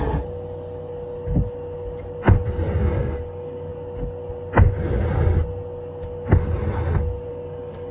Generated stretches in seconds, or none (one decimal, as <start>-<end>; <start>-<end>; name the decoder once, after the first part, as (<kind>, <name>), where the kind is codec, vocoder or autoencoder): 2.8-3.7 (codec, DAC); 7.3-7.9